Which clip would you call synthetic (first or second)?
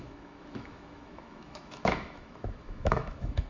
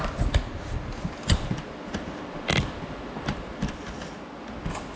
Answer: first